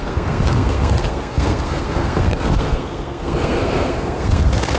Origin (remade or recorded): remade